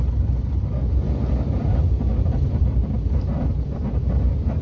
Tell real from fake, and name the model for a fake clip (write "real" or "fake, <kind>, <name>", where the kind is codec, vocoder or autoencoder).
real